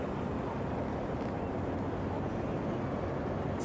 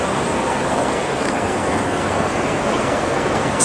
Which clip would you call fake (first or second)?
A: second